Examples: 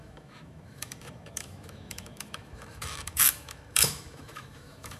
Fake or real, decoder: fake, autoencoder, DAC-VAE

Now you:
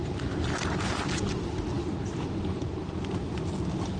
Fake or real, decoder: real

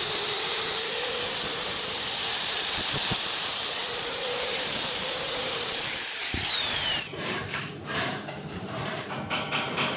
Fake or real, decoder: fake, vocoder, BigVGAN v2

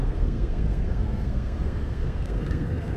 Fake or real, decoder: fake, codec, SNAC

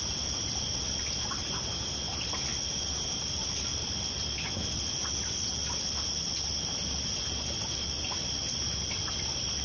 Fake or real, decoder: real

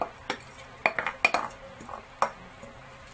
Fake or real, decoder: real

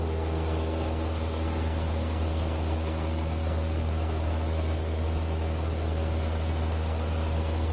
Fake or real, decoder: fake, codec, SNAC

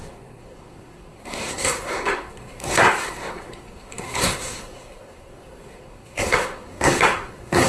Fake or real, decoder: fake, codec, SNAC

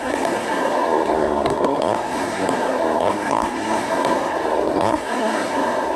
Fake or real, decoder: fake, codec, SNAC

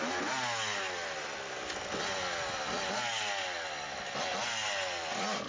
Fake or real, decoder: real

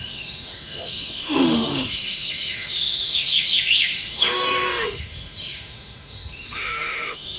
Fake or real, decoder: fake, autoencoder, DAC-VAE